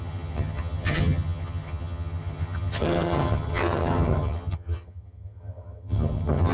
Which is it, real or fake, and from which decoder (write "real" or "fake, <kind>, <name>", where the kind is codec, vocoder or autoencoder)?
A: fake, vocoder, HiFi-GAN